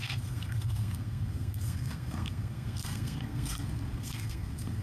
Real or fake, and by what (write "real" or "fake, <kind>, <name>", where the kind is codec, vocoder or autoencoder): fake, codec, SNAC